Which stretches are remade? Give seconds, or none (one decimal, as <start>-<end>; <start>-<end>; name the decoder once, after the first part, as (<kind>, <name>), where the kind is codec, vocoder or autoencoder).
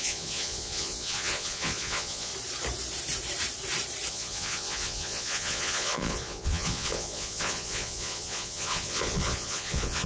0.0-2.3 (vocoder, Vocos); 4.1-10.1